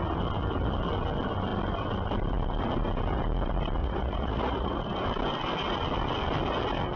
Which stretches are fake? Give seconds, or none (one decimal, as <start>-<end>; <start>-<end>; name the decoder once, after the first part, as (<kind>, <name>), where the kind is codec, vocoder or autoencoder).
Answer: 3.8-4.8 (vocoder, Vocos)